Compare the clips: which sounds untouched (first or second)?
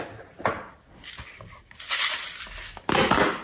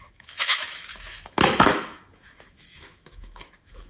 first